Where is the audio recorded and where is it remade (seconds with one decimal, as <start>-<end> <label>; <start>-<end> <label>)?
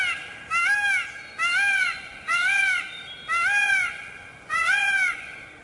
0.0-1.7 recorded; 1.7-2.8 remade; 2.8-3.6 recorded; 3.6-5.6 remade